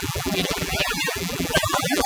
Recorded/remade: remade